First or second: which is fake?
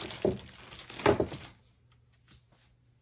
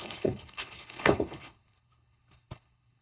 second